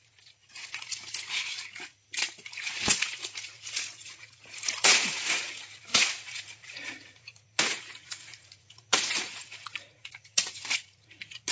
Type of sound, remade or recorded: remade